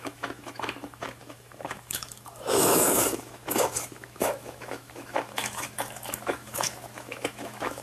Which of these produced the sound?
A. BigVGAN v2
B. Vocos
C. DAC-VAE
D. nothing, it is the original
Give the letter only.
C